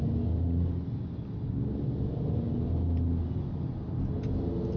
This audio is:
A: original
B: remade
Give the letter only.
A